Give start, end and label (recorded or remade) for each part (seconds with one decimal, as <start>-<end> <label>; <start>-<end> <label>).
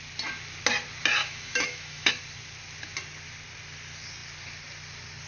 0.0-1.2 recorded; 1.2-2.1 remade; 2.1-5.3 recorded